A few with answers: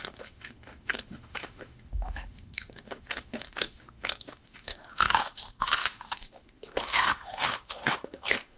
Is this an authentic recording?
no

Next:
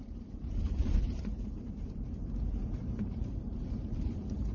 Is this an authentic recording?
no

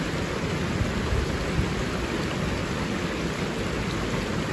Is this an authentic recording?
yes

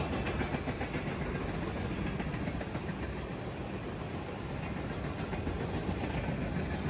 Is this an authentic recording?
yes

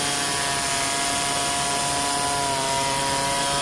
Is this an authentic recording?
yes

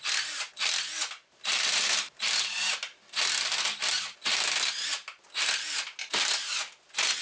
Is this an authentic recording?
yes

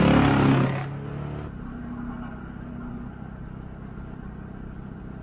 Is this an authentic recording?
yes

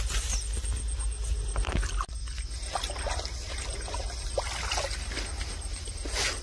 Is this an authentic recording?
yes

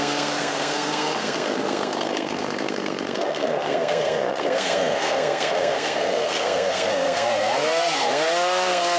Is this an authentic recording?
no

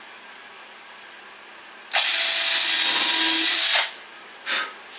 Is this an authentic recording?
yes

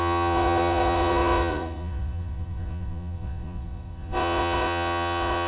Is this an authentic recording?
no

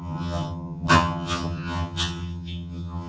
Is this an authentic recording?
no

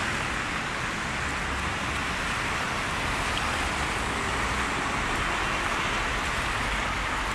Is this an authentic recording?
yes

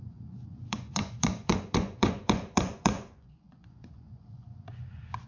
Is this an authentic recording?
no